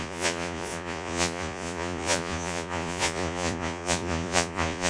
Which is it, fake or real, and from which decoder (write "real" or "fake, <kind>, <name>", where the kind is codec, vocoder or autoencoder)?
fake, vocoder, Vocos